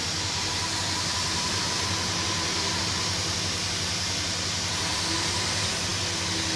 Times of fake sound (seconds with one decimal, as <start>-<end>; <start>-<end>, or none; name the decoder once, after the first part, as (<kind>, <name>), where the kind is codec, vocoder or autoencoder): none